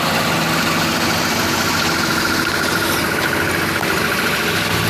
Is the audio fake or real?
real